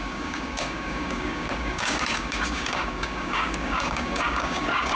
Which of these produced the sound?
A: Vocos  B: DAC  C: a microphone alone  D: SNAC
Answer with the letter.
B